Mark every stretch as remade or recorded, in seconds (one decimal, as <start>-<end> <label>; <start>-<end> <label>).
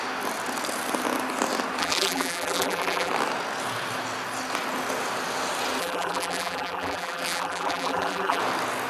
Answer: 0.0-1.8 recorded; 1.8-3.1 remade; 3.1-5.8 recorded; 5.8-8.4 remade; 8.4-8.9 recorded